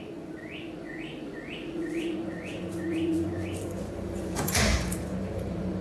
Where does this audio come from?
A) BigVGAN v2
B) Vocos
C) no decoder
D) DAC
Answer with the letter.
B